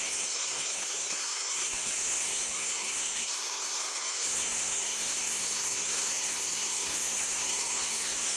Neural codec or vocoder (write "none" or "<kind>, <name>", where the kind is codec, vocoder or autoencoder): codec, SNAC